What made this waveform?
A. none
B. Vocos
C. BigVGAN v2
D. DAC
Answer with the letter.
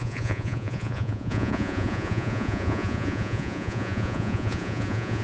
B